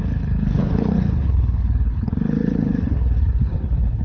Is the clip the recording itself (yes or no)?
no